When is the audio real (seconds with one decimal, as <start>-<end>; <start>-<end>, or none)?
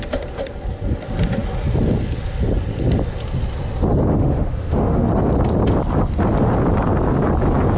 0.0-4.1; 5.1-7.8